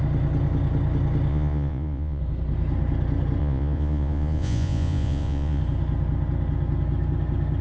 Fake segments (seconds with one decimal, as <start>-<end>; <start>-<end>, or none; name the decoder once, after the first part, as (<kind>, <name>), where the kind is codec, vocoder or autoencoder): 1.3-2.2 (vocoder, Vocos); 3.4-5.6